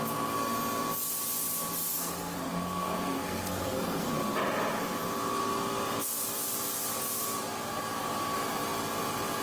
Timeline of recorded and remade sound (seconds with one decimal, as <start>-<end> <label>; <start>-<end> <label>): 0.0-1.9 recorded; 1.9-4.1 remade; 4.1-9.4 recorded